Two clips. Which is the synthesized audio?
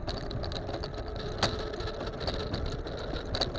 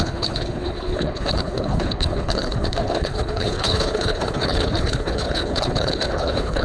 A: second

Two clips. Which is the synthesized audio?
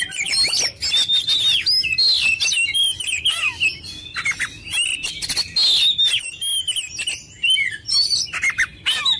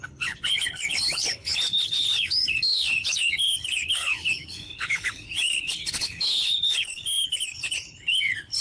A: second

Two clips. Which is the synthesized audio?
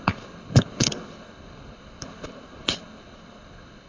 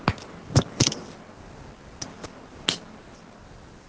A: first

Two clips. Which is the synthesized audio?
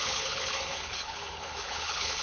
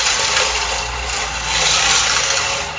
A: first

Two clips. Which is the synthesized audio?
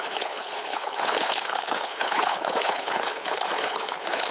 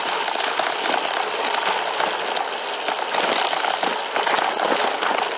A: first